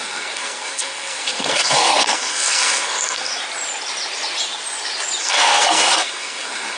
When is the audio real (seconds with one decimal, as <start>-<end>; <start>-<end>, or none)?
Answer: 3.3-5.2